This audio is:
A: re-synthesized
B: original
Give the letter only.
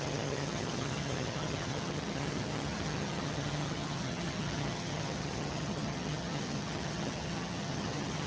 A